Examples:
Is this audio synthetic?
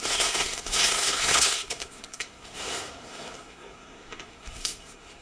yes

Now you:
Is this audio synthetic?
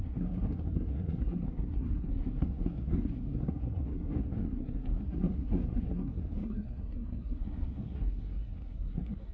yes